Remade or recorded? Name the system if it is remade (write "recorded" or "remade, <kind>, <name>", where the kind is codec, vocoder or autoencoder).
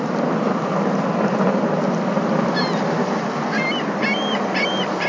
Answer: recorded